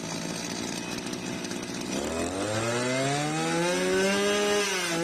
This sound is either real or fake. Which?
real